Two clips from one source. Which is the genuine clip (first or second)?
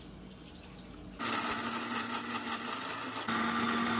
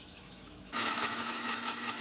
first